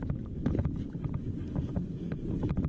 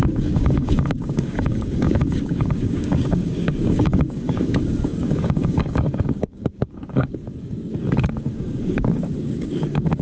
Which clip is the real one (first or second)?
first